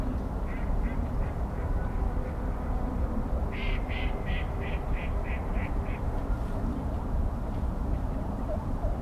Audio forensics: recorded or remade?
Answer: remade